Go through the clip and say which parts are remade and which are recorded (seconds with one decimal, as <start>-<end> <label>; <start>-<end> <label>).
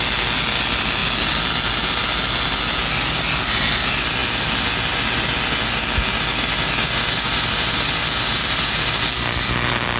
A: 0.0-10.0 recorded